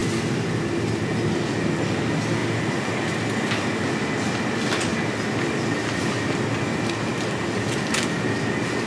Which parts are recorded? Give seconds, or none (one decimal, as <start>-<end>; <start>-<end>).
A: 0.0-8.9